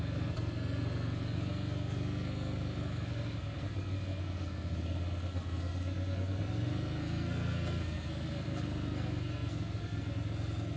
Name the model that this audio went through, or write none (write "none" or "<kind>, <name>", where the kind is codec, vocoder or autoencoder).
codec, SNAC